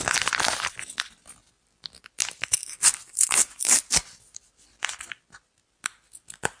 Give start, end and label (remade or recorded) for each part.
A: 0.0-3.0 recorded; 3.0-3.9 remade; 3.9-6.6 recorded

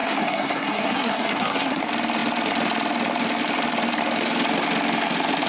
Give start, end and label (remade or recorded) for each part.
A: 0.0-1.8 remade; 1.8-5.5 recorded

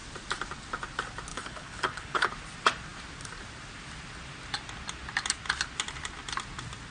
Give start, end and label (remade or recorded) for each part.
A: 0.0-1.3 recorded; 1.3-2.3 remade; 2.3-6.9 recorded

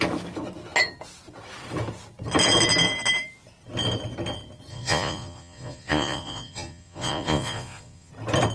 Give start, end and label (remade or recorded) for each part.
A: 0.0-4.7 recorded; 4.7-8.1 remade; 8.1-8.5 recorded

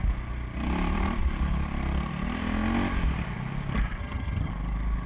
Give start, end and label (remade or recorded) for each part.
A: 0.0-4.0 recorded; 4.0-4.5 remade; 4.5-5.1 recorded

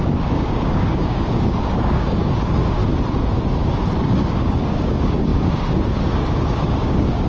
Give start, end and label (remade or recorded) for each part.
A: 0.0-2.8 remade; 2.8-4.0 recorded; 4.0-7.3 remade

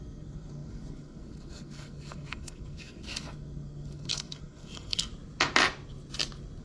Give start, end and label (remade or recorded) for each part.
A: 0.0-5.1 remade; 5.1-6.6 recorded